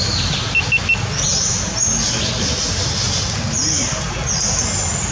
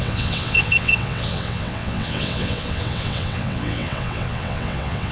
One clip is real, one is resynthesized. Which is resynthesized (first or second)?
second